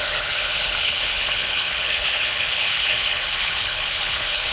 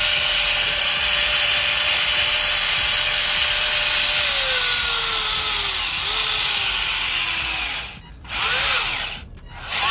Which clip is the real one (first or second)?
second